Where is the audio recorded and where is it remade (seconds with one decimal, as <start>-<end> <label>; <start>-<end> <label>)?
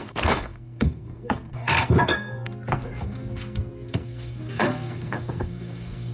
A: 0.0-6.1 remade